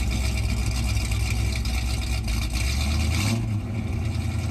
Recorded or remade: recorded